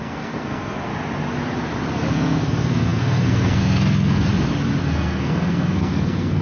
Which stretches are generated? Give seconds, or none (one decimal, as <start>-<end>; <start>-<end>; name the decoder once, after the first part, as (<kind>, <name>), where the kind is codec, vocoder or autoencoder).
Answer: 0.0-0.9 (codec, SNAC); 2.1-4.3; 4.8-6.4